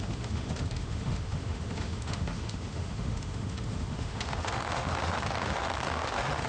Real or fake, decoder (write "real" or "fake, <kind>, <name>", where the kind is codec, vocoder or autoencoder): fake, autoencoder, DAC-VAE